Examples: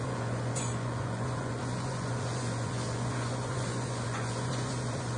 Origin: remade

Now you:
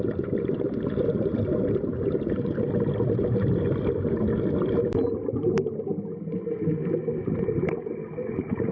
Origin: recorded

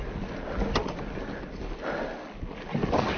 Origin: recorded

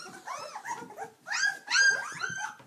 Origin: recorded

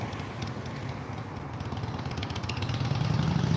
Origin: recorded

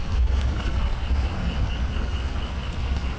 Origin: remade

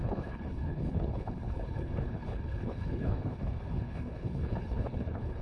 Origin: remade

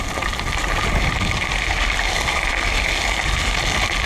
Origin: recorded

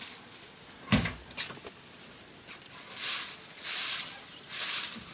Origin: recorded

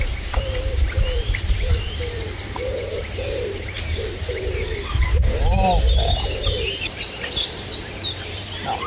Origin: remade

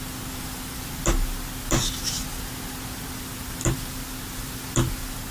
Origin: recorded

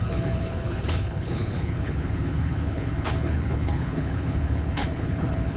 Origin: remade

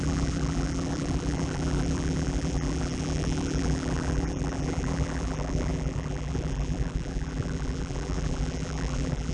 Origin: remade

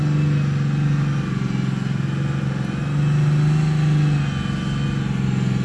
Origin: recorded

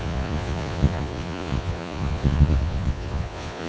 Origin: remade